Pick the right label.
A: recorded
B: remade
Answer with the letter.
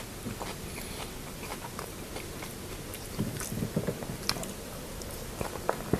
A